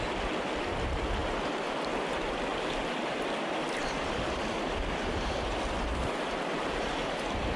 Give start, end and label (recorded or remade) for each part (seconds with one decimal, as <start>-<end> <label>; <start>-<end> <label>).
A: 0.0-7.6 recorded